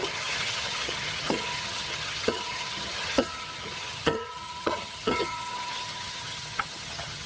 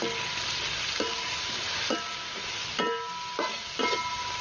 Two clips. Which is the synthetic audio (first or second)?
first